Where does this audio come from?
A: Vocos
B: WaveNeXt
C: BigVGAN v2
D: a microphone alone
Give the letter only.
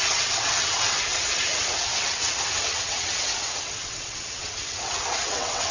B